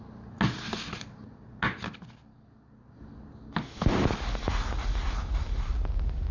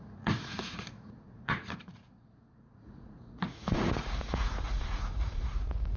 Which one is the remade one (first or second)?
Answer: second